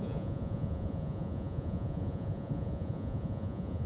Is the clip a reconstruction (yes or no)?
yes